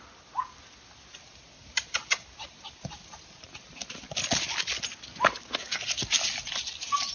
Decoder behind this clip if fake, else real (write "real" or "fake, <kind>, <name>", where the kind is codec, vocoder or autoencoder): real